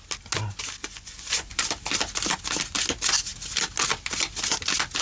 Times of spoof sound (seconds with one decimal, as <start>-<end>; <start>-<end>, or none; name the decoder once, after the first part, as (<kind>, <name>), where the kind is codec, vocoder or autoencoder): 0.8-1.6 (vocoder, Vocos)